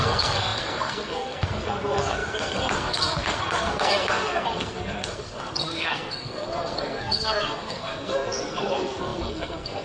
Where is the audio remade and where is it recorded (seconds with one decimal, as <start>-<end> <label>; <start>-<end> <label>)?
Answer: 0.0-9.8 remade